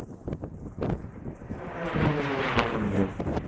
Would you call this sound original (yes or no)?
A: no